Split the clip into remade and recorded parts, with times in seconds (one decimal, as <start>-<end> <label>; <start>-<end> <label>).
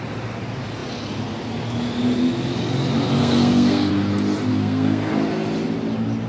0.0-3.2 recorded; 3.2-3.9 remade; 3.9-4.5 recorded; 4.5-5.1 remade; 5.1-6.3 recorded